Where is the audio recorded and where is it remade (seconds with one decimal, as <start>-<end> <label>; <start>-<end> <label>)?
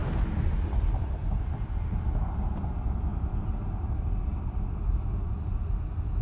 0.0-6.2 recorded